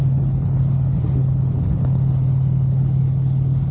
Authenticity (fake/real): fake